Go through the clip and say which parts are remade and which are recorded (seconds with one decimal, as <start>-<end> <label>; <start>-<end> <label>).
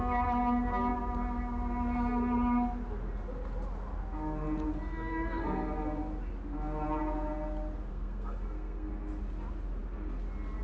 0.0-7.9 recorded; 7.9-8.9 remade; 8.9-10.6 recorded